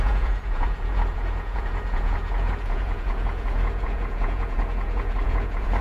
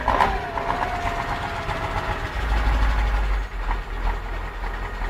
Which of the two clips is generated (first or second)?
first